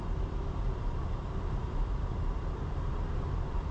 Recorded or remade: remade